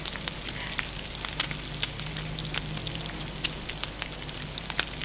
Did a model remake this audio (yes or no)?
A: no